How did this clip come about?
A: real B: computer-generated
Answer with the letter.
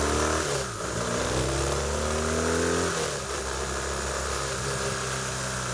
A